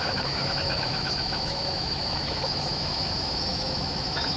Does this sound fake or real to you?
fake